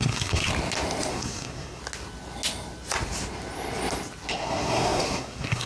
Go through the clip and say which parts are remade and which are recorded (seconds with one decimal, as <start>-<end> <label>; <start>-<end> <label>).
0.0-0.5 remade; 0.5-1.1 recorded; 1.1-1.8 remade; 1.8-4.3 recorded; 4.3-5.7 remade